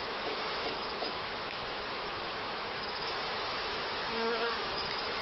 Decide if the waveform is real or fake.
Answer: fake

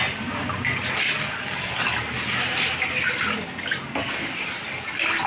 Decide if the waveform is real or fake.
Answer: real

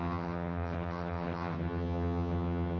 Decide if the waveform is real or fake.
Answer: fake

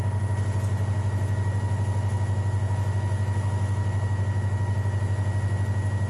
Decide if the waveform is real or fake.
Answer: real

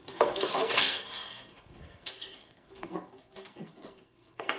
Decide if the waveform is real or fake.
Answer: fake